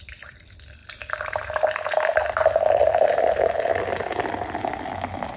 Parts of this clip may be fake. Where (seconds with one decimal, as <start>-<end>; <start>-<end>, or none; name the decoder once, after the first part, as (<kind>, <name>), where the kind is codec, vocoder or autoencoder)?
0.8-1.3 (vocoder, BigVGAN v2)